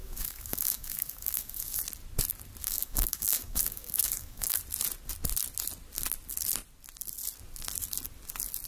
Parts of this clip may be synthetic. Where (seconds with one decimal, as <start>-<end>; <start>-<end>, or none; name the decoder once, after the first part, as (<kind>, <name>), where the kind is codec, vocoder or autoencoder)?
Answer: 0.0-1.8 (codec, DAC); 2.6-4.6